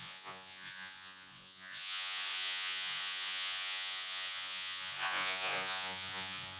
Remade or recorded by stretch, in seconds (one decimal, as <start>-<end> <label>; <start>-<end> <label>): 0.0-6.6 remade